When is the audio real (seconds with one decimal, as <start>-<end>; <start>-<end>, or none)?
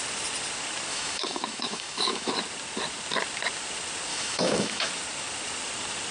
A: 0.0-0.9; 2.3-4.1; 4.9-6.1